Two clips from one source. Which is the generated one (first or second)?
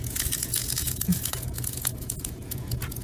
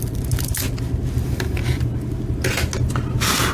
first